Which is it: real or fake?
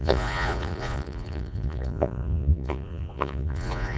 fake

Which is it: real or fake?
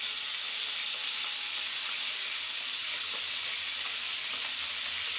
real